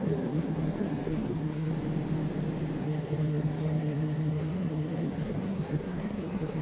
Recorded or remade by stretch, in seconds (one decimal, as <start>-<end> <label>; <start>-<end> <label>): 0.0-1.7 remade; 1.7-2.8 recorded; 2.8-6.6 remade